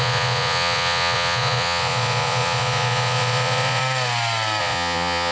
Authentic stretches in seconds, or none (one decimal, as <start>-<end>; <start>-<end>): 3.8-4.6